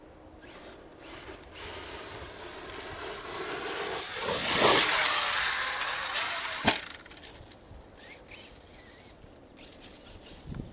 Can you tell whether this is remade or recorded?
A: recorded